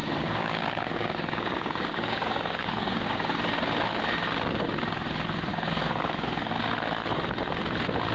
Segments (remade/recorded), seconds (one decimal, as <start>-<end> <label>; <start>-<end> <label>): 0.0-3.3 remade; 3.3-5.5 recorded; 5.5-6.6 remade; 6.6-8.1 recorded

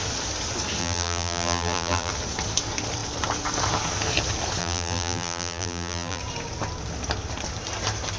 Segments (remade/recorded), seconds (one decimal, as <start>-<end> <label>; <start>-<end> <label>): 0.0-0.8 recorded; 0.8-2.1 remade; 2.1-4.6 recorded; 4.6-6.2 remade; 6.2-8.2 recorded

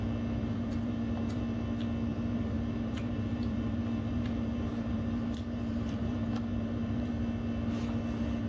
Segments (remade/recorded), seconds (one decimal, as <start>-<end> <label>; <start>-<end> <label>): 0.0-0.4 recorded; 0.4-1.4 remade; 1.4-2.1 recorded; 2.1-7.1 remade; 7.1-8.5 recorded

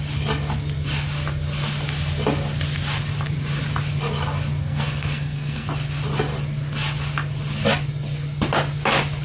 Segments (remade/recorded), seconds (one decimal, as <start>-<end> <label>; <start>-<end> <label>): 0.0-4.6 recorded; 4.6-5.7 remade; 5.7-9.2 recorded